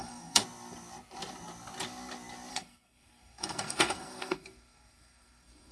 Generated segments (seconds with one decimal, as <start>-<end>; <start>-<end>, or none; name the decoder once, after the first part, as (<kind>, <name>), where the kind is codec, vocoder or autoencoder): 0.0-0.4 (codec, SNAC); 2.5-5.7